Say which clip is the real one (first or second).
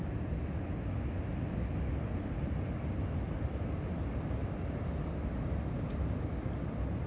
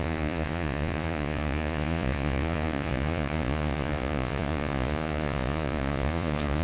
first